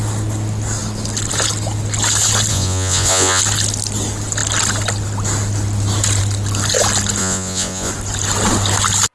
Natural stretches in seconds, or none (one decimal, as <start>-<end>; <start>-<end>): 0.0-2.5; 3.4-7.2; 7.9-9.1